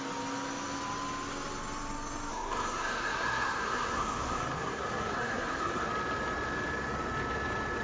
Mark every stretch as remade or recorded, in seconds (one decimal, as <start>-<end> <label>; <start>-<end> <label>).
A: 0.0-2.3 recorded; 2.3-5.9 remade; 5.9-7.8 recorded